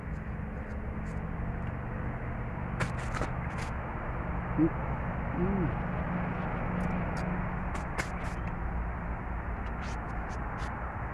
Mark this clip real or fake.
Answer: real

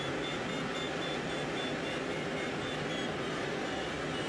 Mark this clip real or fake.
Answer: fake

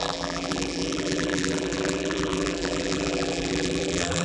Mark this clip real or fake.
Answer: fake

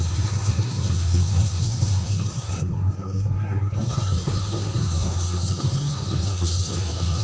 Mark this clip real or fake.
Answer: fake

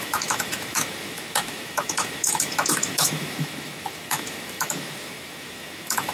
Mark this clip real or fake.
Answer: fake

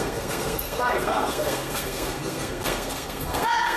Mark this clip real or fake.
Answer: fake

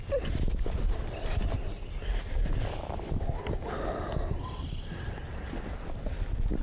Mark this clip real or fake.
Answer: real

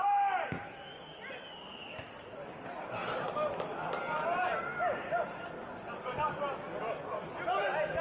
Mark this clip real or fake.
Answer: real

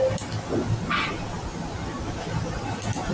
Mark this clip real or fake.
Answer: real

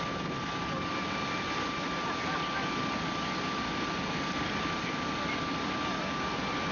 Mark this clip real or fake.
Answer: real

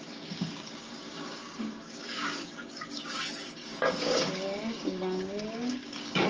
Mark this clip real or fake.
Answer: fake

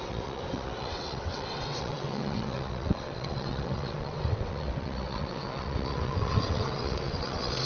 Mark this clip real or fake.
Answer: fake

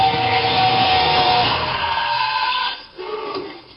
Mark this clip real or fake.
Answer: fake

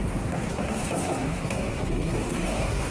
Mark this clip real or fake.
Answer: fake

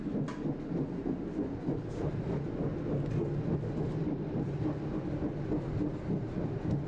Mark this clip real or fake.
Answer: real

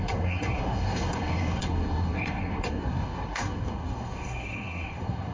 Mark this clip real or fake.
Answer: fake